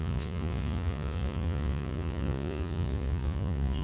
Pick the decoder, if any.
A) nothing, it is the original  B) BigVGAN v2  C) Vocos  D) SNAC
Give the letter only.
C